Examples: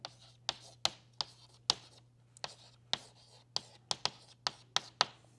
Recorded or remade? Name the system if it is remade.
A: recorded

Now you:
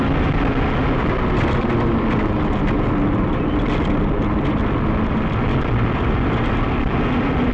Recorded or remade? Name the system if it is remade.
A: recorded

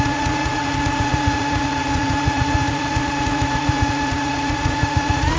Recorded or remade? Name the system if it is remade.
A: remade, vocoder, Vocos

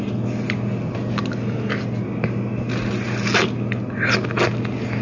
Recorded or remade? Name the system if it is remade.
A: recorded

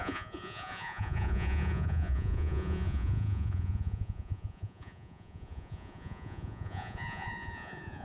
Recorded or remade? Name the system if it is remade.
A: remade, vocoder, Vocos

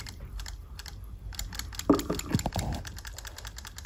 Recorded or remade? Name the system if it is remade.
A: recorded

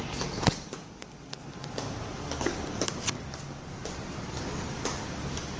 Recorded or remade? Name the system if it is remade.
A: recorded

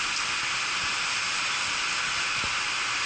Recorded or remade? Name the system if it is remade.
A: recorded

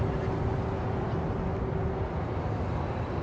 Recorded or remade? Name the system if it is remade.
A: recorded